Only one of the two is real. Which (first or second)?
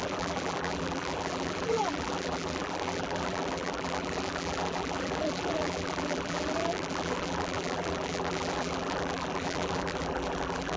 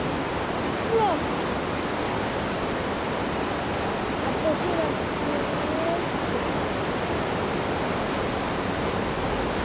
second